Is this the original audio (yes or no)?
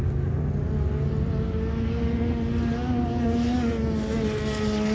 yes